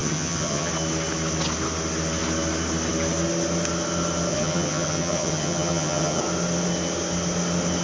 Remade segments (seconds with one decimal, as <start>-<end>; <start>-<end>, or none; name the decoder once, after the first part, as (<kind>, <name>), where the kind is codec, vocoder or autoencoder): 0.0-0.7 (vocoder, HiFi-GAN); 4.3-6.2